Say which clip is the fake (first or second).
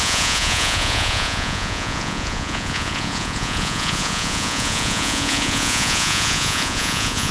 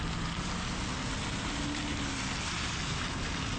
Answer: first